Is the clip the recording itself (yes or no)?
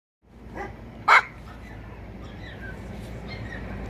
no